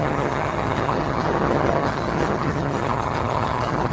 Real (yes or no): no